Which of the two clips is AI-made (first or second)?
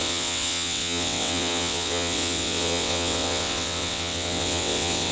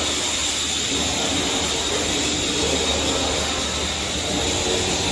first